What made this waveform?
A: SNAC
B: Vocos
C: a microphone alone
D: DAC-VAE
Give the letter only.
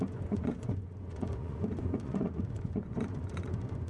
B